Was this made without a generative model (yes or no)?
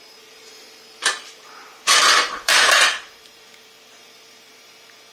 no